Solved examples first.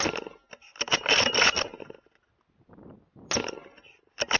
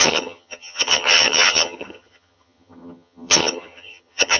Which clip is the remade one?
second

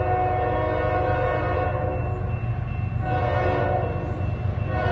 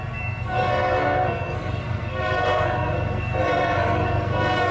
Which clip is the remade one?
second